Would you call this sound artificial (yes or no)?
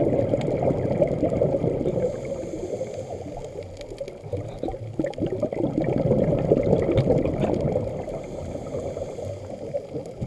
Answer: no